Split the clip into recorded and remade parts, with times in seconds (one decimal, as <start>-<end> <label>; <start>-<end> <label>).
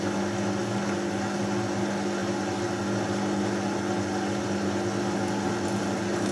0.0-6.3 recorded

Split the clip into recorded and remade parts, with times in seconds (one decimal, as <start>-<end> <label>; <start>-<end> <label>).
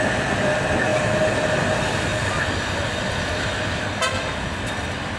0.0-5.2 recorded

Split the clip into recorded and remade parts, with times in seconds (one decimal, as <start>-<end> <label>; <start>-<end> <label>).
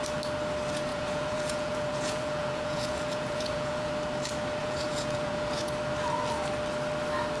0.0-0.9 recorded; 0.9-3.9 remade; 3.9-4.6 recorded; 4.6-5.6 remade; 5.6-7.4 recorded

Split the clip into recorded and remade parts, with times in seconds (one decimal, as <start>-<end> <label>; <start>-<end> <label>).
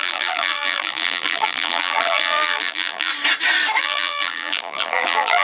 0.0-3.1 remade; 3.1-3.8 recorded; 3.8-5.4 remade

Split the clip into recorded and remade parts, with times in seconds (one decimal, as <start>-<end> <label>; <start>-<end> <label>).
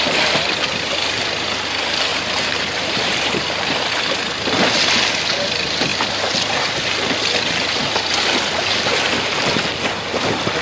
0.0-2.1 recorded; 2.1-3.9 remade; 3.9-10.6 recorded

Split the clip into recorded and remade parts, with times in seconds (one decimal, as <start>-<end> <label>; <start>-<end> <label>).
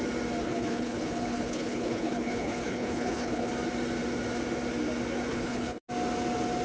0.0-0.4 recorded; 0.4-3.5 remade; 3.5-5.3 recorded; 5.3-5.8 remade; 5.8-6.6 recorded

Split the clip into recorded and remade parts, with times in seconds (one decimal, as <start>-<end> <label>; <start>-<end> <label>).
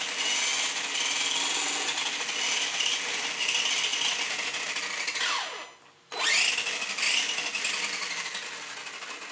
0.0-9.3 recorded